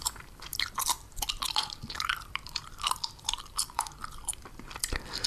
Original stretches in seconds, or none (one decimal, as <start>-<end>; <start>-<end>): none